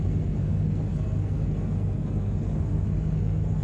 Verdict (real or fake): fake